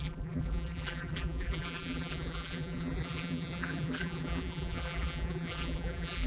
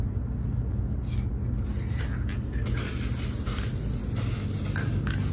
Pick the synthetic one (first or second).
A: first